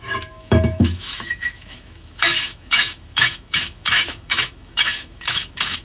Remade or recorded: remade